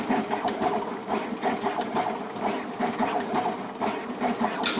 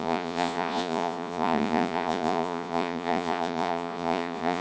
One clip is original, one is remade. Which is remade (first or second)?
second